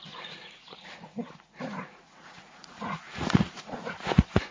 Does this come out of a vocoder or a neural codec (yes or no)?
yes